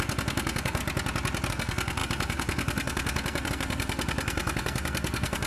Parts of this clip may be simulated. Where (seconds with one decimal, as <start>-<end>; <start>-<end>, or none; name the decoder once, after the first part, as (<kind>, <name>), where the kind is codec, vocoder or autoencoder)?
0.0-0.8 (codec, SNAC); 1.5-5.5